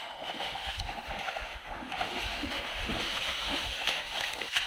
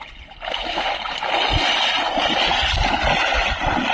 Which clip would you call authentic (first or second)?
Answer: second